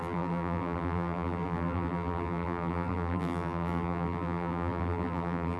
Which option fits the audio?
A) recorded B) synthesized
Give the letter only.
B